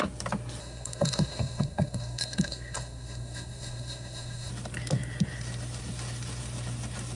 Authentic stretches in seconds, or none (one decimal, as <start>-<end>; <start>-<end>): 0.0-0.6; 4.5-7.1